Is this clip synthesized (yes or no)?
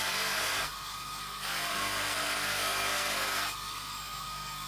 yes